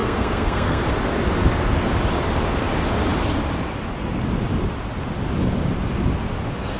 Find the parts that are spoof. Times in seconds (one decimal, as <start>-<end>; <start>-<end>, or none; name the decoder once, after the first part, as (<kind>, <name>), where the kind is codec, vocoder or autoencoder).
0.0-0.8 (codec, SNAC)